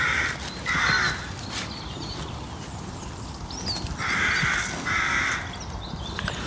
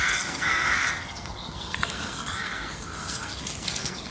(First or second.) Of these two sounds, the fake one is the second